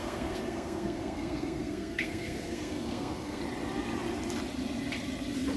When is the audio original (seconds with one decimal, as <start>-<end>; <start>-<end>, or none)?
3.4-5.6